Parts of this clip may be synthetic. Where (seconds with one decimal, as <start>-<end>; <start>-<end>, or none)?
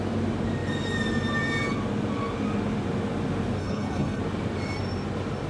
3.6-4.2